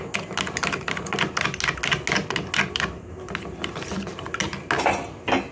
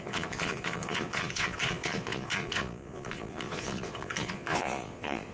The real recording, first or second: first